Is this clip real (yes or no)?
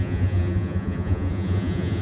no